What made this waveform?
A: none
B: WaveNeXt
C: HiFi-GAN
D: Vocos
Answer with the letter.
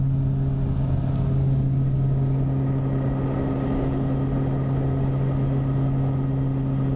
A